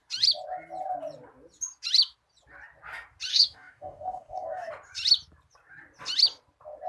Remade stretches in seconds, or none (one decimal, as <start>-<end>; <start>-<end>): 3.3-4.7